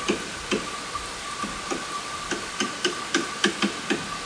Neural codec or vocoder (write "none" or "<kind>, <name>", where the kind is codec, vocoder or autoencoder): none